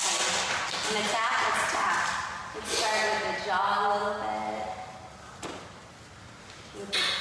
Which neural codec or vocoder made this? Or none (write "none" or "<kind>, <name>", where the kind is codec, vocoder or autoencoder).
none